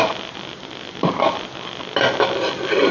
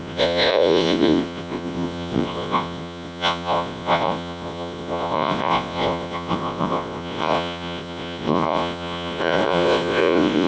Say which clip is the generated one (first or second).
second